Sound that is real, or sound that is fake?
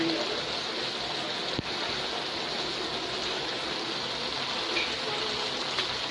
real